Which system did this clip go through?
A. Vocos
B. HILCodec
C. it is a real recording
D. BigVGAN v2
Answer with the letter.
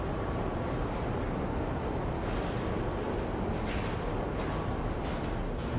C